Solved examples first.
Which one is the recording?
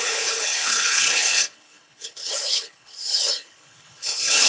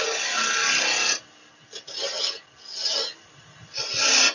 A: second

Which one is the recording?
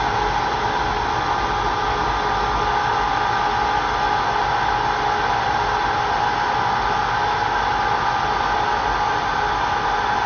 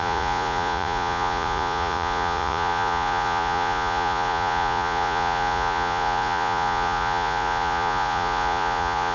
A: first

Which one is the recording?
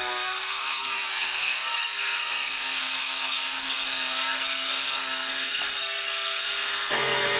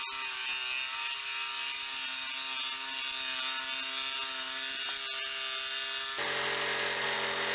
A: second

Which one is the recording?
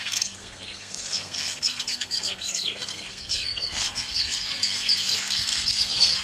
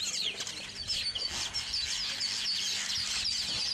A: second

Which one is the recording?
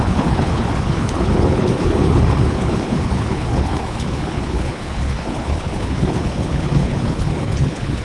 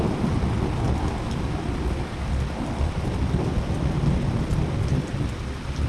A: second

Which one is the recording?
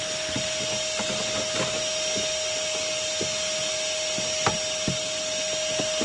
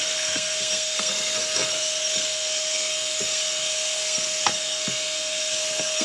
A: first